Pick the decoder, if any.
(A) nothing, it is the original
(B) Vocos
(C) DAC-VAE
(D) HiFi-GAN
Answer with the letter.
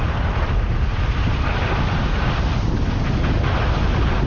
A